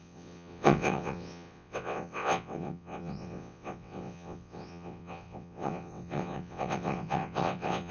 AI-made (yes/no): yes